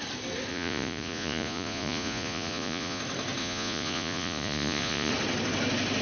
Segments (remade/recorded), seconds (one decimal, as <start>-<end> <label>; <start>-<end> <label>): 0.0-0.5 recorded; 0.5-3.0 remade; 3.0-3.4 recorded; 3.4-5.1 remade; 5.1-6.0 recorded